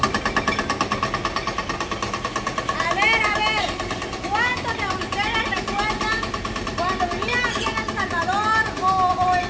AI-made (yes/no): no